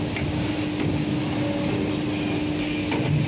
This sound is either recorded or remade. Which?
recorded